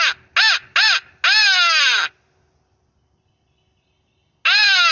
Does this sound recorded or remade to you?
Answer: recorded